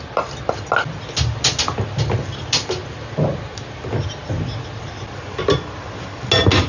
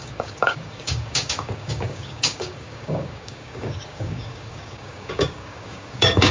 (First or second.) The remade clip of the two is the second